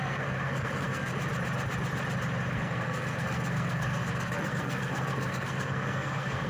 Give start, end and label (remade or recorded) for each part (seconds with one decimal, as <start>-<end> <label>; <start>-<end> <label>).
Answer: 0.0-1.1 remade; 1.1-2.5 recorded; 2.5-6.5 remade